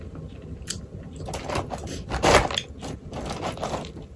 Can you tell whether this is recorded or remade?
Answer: recorded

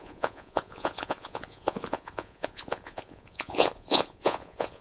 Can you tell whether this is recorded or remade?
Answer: remade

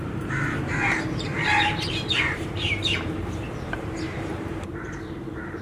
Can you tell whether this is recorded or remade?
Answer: remade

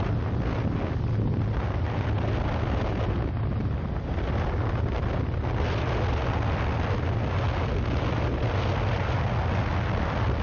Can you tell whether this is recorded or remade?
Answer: recorded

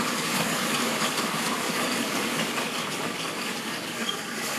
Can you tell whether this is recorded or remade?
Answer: remade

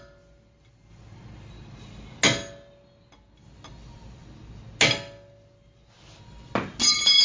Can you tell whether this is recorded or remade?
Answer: recorded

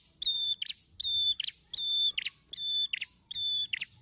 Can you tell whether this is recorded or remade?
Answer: recorded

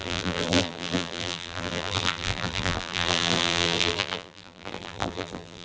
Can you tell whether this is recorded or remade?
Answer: remade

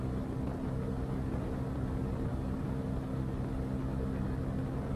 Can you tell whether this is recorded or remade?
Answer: recorded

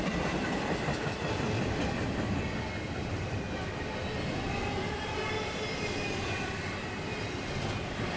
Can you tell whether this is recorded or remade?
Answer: recorded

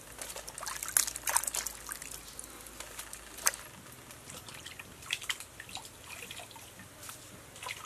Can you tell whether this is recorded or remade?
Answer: recorded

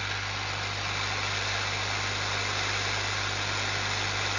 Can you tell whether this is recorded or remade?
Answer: recorded